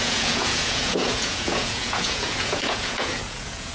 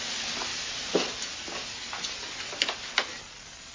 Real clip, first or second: second